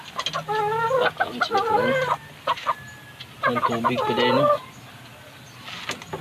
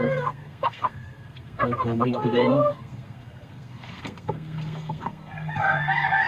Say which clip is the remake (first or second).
second